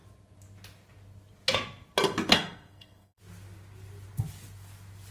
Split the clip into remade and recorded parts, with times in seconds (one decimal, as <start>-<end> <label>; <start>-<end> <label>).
0.0-2.3 recorded; 2.3-3.2 remade; 3.2-5.1 recorded